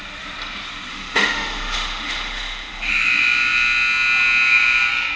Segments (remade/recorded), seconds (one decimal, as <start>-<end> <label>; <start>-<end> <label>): 0.0-0.9 recorded; 0.9-2.9 remade; 2.9-5.2 recorded